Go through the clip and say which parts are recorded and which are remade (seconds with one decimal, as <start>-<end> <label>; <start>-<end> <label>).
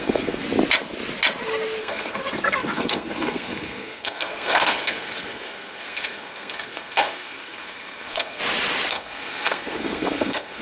0.0-0.4 remade; 0.4-1.8 recorded; 1.8-8.4 remade; 8.4-8.9 recorded; 8.9-10.6 remade